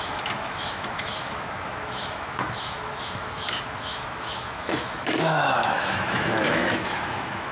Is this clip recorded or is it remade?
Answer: remade